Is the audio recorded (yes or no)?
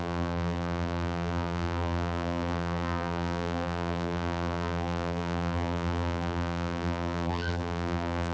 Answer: no